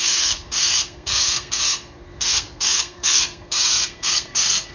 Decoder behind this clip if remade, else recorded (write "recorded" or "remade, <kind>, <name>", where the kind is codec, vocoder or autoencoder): remade, codec, SNAC